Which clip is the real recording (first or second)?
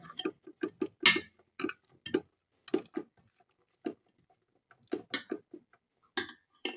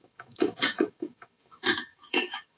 first